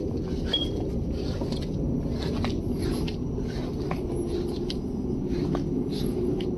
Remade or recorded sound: recorded